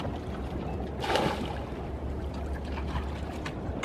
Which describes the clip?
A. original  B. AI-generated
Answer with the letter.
A